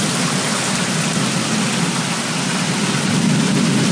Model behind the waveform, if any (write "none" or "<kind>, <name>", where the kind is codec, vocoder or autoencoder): none